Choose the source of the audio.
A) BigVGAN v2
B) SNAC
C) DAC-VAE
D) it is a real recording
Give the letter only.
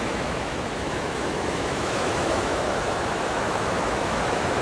C